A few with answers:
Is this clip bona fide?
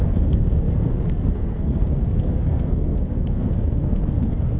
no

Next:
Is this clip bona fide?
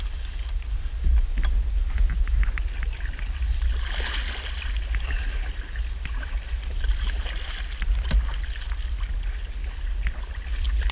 yes